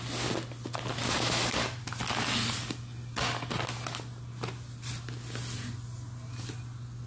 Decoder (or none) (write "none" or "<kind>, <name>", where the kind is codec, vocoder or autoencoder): none